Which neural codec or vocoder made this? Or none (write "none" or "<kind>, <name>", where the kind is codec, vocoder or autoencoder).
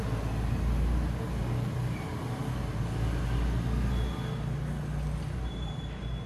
none